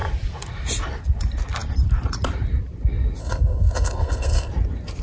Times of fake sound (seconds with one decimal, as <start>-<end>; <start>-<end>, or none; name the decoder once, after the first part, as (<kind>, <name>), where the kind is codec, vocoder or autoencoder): 3.2-4.5 (codec, SNAC)